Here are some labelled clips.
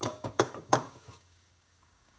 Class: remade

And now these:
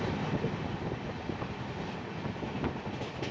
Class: recorded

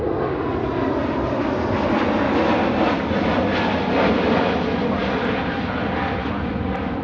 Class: recorded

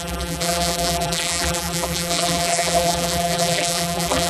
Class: remade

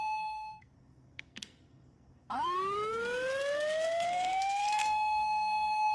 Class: remade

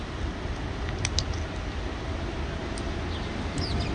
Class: recorded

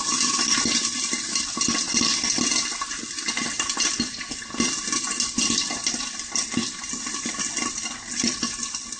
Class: recorded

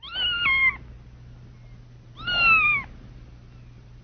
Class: recorded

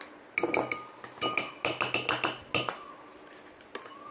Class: recorded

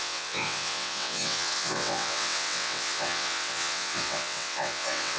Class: remade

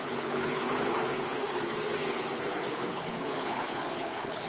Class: remade